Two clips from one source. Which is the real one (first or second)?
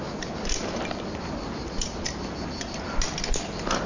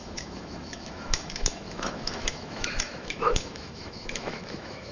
first